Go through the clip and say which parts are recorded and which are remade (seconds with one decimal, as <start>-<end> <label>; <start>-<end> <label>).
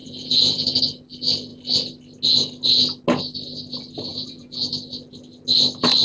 0.0-0.8 remade; 0.8-4.1 recorded; 4.1-4.7 remade; 4.7-6.0 recorded